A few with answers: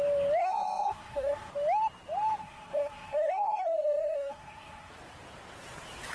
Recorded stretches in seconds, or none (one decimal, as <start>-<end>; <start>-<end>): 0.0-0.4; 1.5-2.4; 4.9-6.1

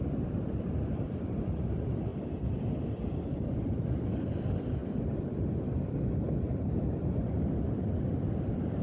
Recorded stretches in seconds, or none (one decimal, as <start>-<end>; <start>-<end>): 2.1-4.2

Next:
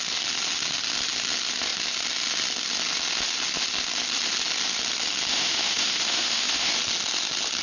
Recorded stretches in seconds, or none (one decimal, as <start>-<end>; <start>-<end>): 0.0-5.3; 6.7-7.6

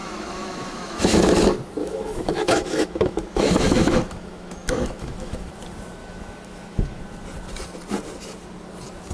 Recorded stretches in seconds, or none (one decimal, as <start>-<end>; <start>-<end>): 1.4-1.8; 5.5-6.0; 7.0-9.1

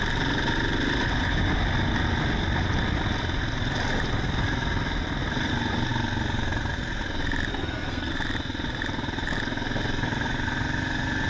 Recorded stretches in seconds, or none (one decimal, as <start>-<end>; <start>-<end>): 0.0-7.5; 8.1-11.3

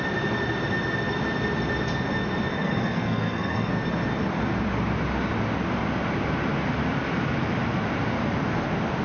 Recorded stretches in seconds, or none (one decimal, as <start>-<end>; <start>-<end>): 0.0-2.5; 3.7-9.0

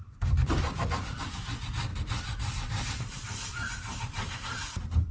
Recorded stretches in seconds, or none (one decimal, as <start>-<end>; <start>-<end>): 1.9-2.7